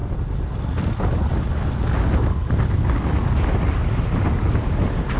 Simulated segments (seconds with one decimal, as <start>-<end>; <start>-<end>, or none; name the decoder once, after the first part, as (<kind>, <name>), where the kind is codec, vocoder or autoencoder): none